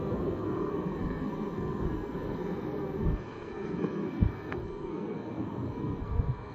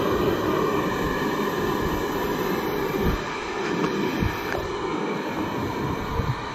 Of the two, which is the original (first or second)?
second